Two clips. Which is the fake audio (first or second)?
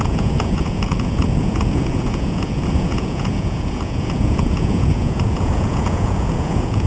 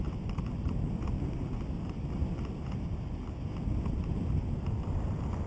first